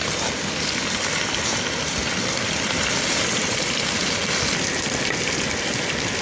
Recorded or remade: recorded